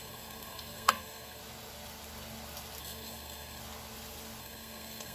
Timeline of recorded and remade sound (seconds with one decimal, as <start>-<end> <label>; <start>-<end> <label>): 0.0-1.4 remade; 1.4-2.8 recorded; 2.8-3.6 remade; 3.6-4.4 recorded; 4.4-5.1 remade